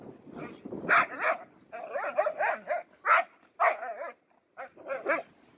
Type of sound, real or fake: real